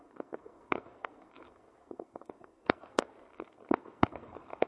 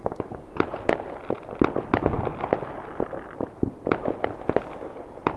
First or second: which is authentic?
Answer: second